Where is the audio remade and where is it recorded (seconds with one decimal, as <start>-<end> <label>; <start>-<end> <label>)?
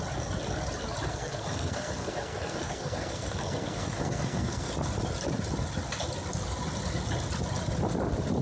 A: 0.0-1.1 recorded; 1.1-4.7 remade; 4.7-8.4 recorded